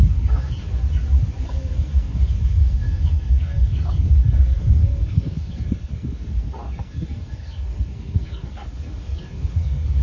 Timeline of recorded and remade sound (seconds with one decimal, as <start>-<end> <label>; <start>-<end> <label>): 0.0-0.8 remade; 0.8-1.4 recorded; 1.4-10.0 remade